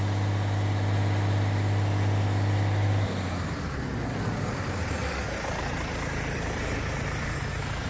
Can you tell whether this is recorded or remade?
recorded